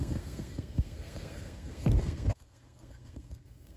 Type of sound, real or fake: fake